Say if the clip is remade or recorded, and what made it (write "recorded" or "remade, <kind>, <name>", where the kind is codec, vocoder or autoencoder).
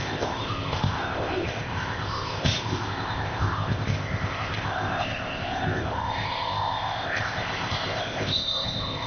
remade, codec, ZipCodec